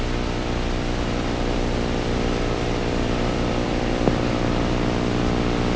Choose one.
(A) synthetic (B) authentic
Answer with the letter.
A